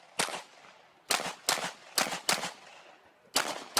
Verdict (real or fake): real